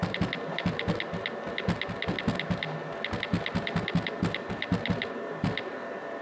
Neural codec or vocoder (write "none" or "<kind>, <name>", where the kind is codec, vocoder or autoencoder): none